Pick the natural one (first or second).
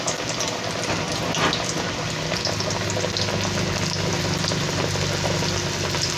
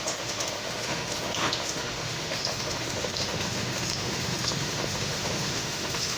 first